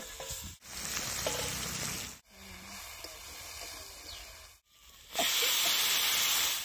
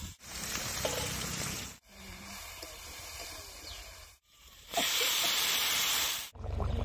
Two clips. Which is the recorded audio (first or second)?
first